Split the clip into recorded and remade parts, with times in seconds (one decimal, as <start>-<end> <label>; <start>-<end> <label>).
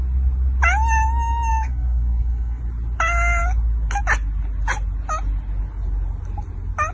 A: 0.0-1.5 recorded; 1.5-2.6 remade; 2.6-6.9 recorded